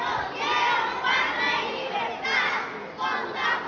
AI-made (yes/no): no